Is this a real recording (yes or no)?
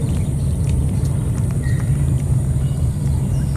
no